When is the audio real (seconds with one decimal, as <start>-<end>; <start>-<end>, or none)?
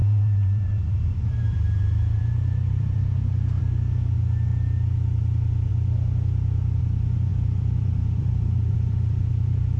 3.6-7.3